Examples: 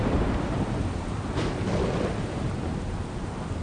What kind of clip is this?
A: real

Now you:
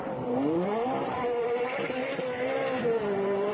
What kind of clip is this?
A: fake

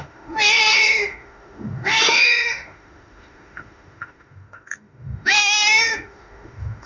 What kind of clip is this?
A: fake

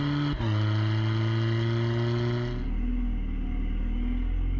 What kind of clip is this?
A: real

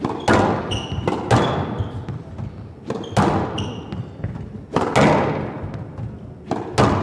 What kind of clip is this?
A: real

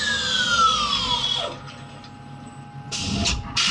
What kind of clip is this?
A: real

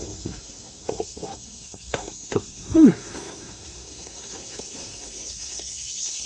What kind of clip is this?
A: fake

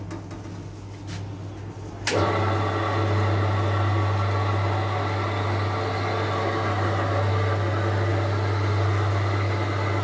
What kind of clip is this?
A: real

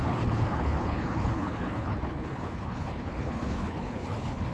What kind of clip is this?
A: fake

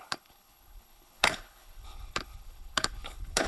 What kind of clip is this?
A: fake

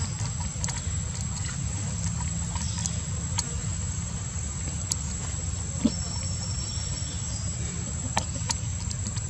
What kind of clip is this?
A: fake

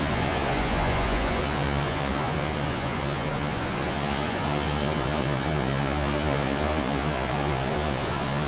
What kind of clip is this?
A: fake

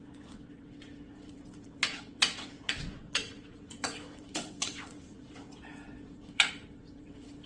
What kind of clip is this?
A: fake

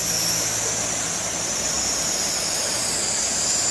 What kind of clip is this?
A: real